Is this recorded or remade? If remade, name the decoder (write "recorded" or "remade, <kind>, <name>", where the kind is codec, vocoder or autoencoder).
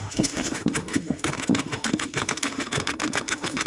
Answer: remade, autoencoder, DAC-VAE